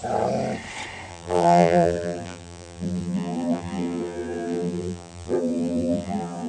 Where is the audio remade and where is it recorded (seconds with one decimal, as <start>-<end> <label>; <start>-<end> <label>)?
0.0-1.1 recorded; 1.1-6.5 remade